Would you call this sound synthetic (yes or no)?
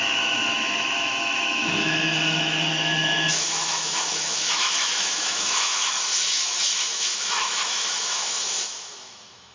yes